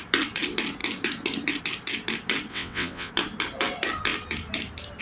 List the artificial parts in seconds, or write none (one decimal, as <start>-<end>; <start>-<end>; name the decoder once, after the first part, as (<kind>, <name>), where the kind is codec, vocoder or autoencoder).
2.5-3.1 (vocoder, WaveNeXt)